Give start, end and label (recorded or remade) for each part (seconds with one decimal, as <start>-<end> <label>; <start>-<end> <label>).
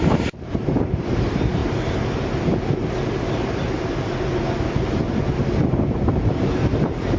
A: 0.0-1.6 remade; 1.6-5.7 recorded; 5.7-7.2 remade